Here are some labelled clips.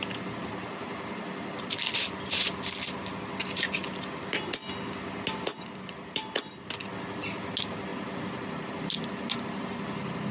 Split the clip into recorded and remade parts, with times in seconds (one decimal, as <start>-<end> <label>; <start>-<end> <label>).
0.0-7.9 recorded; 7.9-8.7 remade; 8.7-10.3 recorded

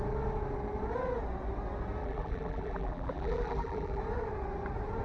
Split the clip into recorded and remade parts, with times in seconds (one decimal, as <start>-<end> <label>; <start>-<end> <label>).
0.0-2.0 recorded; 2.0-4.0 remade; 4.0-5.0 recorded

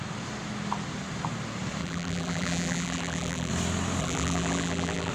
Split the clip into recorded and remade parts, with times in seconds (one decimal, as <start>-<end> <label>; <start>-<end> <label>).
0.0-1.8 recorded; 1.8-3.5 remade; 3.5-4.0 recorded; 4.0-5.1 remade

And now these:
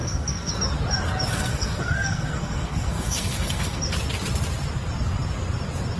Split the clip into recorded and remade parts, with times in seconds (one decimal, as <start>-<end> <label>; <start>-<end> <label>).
0.0-0.5 remade; 0.5-1.3 recorded; 1.3-3.8 remade; 3.8-6.0 recorded

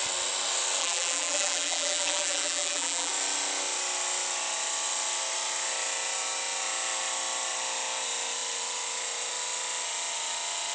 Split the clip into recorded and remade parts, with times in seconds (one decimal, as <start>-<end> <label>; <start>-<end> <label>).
0.0-0.8 recorded; 0.8-3.1 remade; 3.1-10.7 recorded

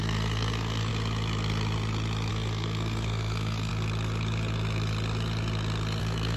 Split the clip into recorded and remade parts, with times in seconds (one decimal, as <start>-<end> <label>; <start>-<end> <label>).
0.0-0.9 remade; 0.9-2.3 recorded; 2.3-3.7 remade; 3.7-6.0 recorded; 6.0-6.4 remade

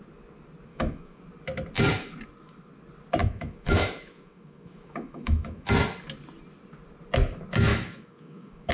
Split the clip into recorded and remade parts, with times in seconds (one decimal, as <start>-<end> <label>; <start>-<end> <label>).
0.0-0.7 recorded; 0.7-1.2 remade; 1.2-3.2 recorded; 3.2-5.7 remade; 5.7-7.7 recorded; 7.7-8.7 remade

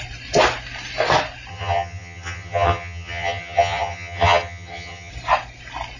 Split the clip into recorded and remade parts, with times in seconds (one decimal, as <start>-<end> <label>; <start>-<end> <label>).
0.0-1.5 recorded; 1.5-5.1 remade; 5.1-6.0 recorded